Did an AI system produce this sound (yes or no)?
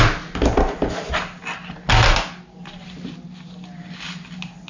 no